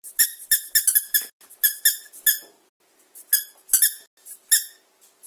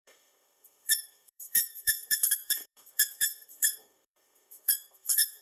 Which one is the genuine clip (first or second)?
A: first